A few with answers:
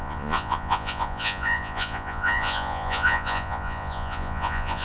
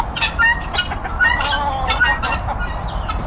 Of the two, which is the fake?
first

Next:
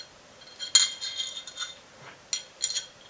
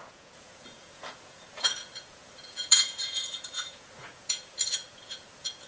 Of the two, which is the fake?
second